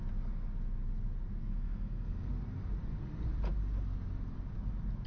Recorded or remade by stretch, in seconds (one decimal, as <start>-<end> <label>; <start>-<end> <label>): 0.0-1.4 recorded; 1.4-2.3 remade; 2.3-5.1 recorded